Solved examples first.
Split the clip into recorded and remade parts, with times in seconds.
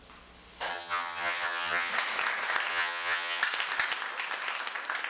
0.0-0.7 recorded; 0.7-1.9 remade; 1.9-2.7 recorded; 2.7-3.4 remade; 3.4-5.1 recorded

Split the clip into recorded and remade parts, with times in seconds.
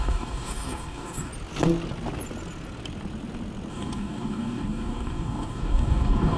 0.0-1.3 remade; 1.3-3.7 recorded; 3.7-6.4 remade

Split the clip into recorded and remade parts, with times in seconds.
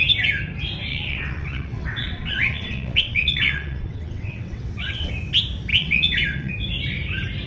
0.0-0.9 recorded; 0.9-5.1 remade; 5.1-5.7 recorded; 5.7-6.5 remade; 6.5-7.5 recorded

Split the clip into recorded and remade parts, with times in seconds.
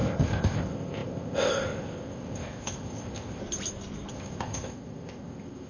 0.0-3.4 remade; 3.4-4.1 recorded; 4.1-5.7 remade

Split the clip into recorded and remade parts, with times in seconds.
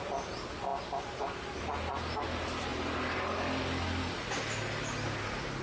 0.0-5.6 recorded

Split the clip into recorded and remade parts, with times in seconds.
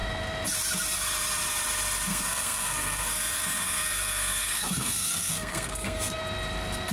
0.0-2.1 recorded; 2.1-6.2 remade; 6.2-6.9 recorded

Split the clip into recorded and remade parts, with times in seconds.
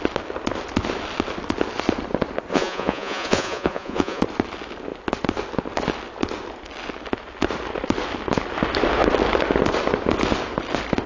0.0-2.5 recorded; 2.5-4.2 remade; 4.2-11.1 recorded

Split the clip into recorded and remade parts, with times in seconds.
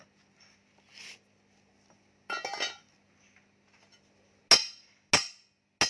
0.0-5.9 recorded